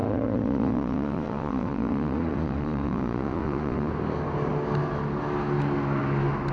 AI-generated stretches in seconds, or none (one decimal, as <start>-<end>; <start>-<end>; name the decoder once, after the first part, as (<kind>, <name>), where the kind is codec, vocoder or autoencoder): 0.0-3.9 (vocoder, Vocos)